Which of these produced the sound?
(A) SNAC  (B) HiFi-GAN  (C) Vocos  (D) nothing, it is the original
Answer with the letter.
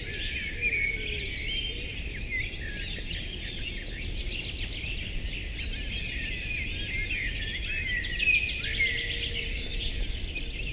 D